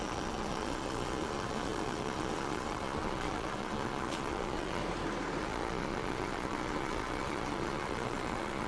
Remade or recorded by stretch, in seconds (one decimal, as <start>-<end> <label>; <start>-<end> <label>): 0.0-4.8 remade; 4.8-5.4 recorded; 5.4-8.7 remade